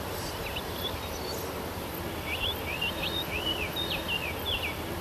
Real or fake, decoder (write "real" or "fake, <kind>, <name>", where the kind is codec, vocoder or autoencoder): real